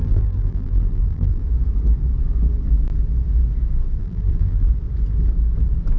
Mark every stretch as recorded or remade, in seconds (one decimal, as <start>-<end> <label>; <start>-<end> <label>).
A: 0.0-1.4 remade; 1.4-4.0 recorded; 4.0-4.7 remade; 4.7-6.0 recorded